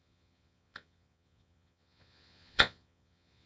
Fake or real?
fake